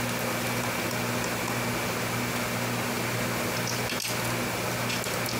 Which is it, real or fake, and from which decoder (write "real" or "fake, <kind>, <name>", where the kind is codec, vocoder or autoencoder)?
real